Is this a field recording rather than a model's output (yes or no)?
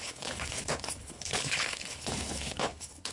no